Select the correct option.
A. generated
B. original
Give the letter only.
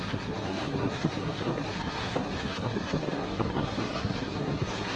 A